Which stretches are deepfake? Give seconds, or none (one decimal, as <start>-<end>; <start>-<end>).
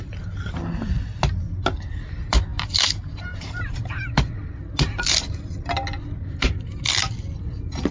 2.5-3.9